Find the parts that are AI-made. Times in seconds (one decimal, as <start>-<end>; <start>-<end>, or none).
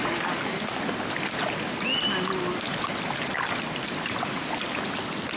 none